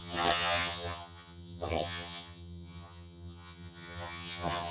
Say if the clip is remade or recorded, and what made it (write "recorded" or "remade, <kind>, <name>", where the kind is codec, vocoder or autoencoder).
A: remade, vocoder, HiFi-GAN